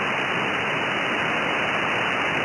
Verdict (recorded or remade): recorded